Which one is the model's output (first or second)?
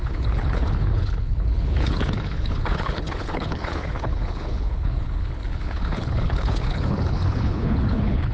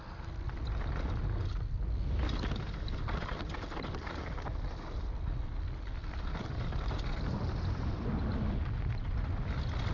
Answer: first